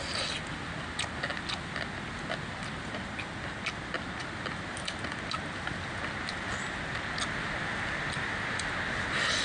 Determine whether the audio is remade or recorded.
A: recorded